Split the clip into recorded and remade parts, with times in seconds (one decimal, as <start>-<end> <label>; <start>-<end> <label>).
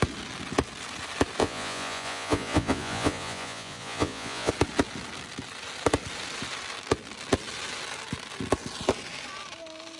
0.0-1.4 recorded; 1.4-4.5 remade; 4.5-10.0 recorded